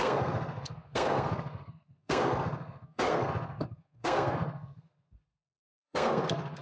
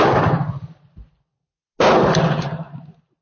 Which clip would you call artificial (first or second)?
first